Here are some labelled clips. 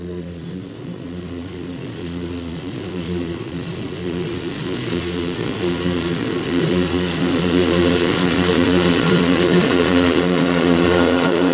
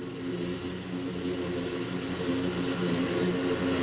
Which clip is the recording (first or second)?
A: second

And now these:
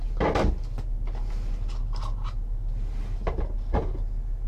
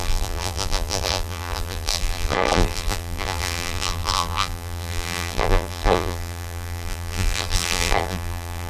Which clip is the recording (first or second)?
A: first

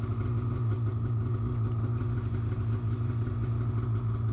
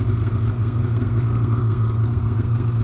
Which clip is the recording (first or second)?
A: first